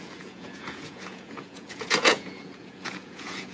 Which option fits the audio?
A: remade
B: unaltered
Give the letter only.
A